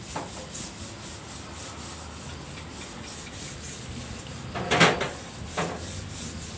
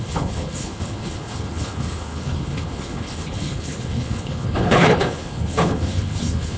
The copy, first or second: second